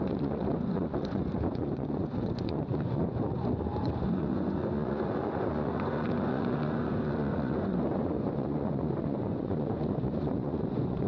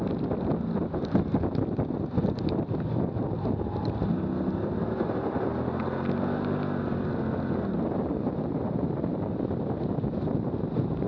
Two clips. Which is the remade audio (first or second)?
first